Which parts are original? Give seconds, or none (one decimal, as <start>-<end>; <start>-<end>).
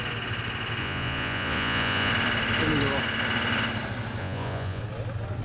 0.0-0.8; 2.1-4.2; 4.8-5.4